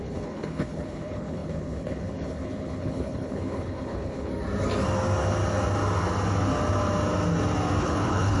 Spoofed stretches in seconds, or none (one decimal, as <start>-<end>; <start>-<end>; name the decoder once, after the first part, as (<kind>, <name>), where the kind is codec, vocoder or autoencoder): 0.0-4.3 (codec, HILCodec); 7.8-8.4